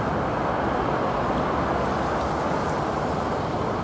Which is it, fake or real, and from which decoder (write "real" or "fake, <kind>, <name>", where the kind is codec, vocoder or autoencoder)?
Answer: real